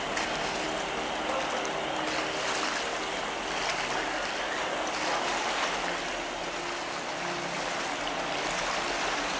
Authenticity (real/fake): real